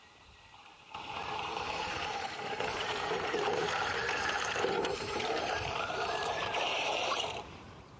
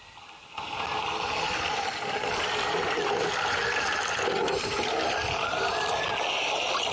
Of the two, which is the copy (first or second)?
first